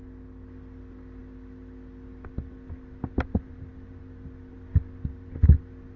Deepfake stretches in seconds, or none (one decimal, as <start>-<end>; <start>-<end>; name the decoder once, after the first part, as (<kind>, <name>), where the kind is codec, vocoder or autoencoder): none